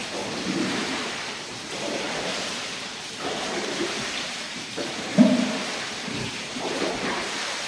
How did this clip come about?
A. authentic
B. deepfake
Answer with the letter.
B